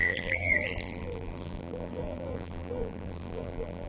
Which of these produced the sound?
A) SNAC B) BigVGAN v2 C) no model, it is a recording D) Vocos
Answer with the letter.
B